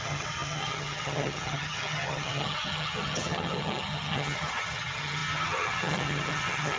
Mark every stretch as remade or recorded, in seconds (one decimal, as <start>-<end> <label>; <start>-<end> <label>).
0.0-6.8 remade